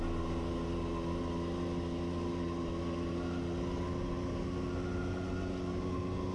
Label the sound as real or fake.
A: real